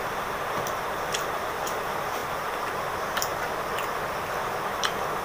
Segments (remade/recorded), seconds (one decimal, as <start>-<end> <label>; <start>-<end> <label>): 0.0-5.2 recorded